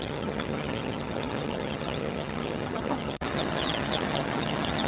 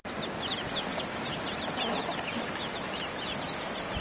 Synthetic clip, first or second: first